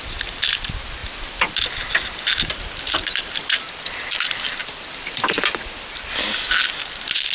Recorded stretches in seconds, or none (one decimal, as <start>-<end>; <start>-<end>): 0.0-1.0; 1.6-3.1; 3.7-4.6; 5.2-7.3